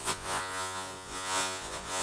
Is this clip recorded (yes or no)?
no